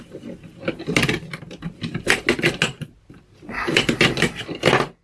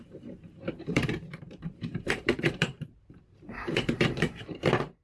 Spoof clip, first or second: second